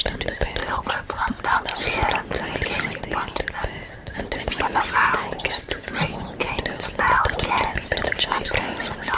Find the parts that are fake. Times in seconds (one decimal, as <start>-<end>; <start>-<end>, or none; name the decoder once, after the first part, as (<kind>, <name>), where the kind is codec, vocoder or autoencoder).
none